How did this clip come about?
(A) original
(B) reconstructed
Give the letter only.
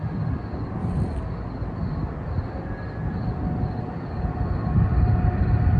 A